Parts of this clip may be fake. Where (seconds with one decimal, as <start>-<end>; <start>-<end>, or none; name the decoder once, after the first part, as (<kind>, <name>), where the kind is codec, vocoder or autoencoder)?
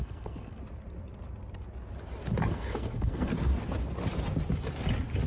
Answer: 0.0-0.6 (codec, SNAC); 2.5-3.3